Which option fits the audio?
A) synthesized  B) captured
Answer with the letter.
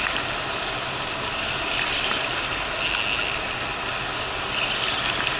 B